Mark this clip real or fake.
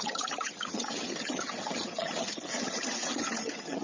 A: fake